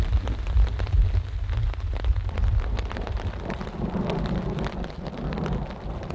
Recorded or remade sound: recorded